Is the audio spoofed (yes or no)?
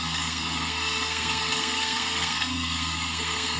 yes